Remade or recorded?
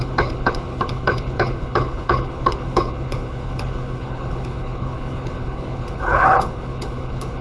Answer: remade